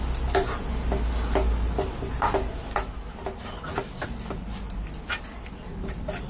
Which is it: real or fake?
real